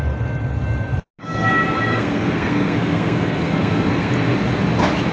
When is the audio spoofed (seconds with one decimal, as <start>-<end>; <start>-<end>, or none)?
1.9-4.1